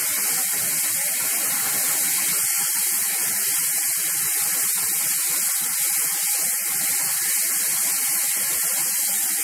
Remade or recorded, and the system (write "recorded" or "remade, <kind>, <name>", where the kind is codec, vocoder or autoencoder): recorded